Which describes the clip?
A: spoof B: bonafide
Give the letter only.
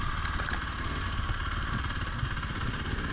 B